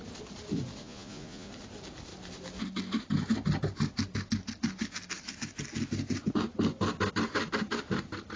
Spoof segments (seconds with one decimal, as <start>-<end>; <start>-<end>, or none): 0.8-1.5